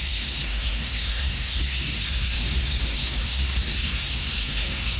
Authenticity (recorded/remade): remade